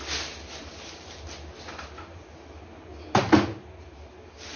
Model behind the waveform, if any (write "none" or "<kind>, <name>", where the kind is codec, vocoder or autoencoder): none